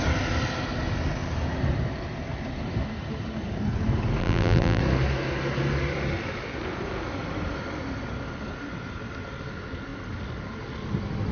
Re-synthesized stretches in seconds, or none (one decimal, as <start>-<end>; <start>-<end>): 4.2-4.8